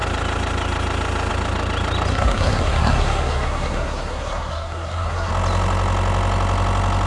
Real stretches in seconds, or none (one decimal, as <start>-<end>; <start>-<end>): 0.0-2.1; 5.3-7.1